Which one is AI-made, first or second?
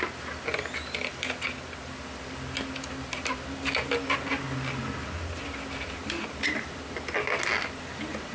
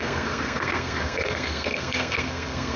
second